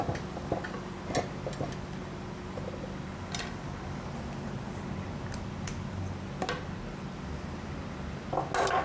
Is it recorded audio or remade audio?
recorded